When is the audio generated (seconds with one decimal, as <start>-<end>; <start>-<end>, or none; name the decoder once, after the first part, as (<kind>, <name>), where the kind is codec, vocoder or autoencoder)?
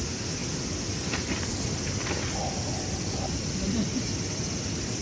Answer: none